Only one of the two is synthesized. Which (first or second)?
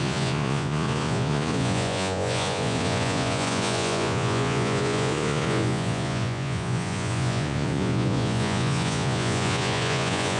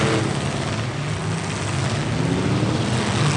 first